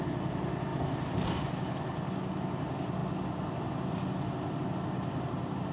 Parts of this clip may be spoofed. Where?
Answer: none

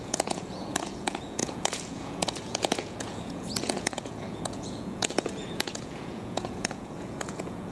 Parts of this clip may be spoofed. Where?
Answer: 0.0-7.7 (vocoder, Vocos)

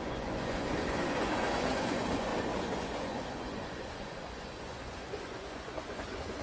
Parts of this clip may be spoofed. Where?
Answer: 0.0-6.4 (vocoder, Vocos)

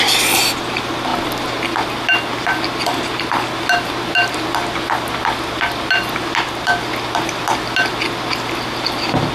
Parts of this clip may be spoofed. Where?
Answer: none

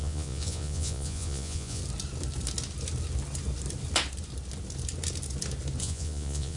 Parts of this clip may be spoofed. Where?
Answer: 0.0-1.8 (vocoder, Vocos); 5.8-6.6

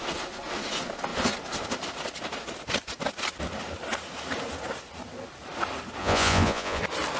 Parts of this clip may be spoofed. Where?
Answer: 6.0-6.8 (vocoder, Vocos)

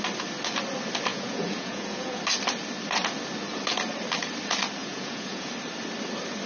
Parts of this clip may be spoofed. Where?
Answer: 1.1-2.2 (vocoder, Vocos); 4.8-5.5